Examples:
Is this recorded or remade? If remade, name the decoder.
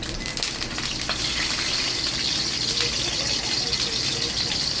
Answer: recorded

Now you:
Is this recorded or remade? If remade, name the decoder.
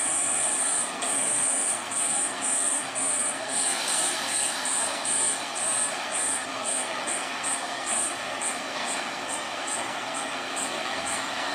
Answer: remade, codec, SNAC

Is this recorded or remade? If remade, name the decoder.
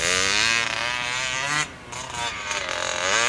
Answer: recorded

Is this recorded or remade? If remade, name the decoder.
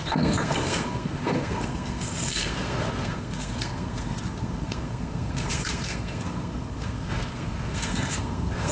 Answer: remade, codec, SNAC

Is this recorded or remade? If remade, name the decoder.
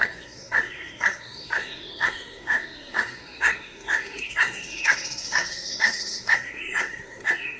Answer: remade, codec, SNAC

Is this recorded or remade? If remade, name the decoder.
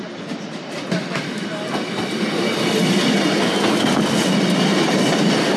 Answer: recorded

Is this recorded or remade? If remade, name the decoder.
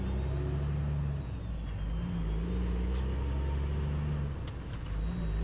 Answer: recorded